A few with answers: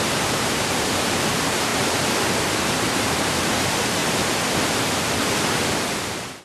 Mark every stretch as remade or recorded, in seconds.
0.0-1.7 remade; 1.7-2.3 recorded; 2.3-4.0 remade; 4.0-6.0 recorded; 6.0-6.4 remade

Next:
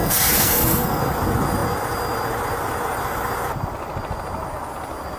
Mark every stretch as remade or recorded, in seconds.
0.0-1.0 remade; 1.0-5.2 recorded

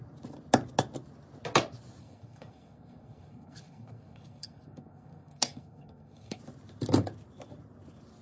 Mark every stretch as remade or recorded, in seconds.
0.0-2.0 recorded; 2.0-6.4 remade; 6.4-8.2 recorded

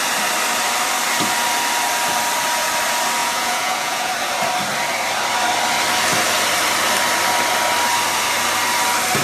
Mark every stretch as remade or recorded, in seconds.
0.0-3.2 recorded; 3.2-4.1 remade; 4.1-9.2 recorded